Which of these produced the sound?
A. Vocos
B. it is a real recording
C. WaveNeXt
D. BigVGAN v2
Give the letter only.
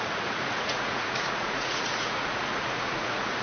A